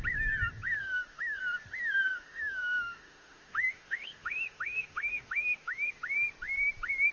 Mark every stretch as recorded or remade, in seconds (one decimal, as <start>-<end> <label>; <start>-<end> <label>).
0.0-0.8 recorded; 0.8-1.4 remade; 1.4-2.1 recorded; 2.1-5.9 remade; 5.9-7.1 recorded